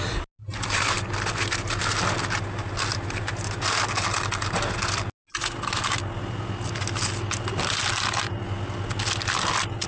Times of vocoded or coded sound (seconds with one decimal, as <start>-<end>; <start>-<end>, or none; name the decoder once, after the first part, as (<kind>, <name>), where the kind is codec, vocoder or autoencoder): none